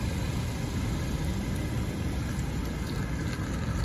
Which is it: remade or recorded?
recorded